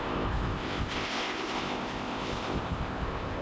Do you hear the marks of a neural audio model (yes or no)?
yes